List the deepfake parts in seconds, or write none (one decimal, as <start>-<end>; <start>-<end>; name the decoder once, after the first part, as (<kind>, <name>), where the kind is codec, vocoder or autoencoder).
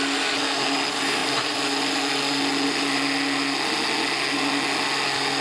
none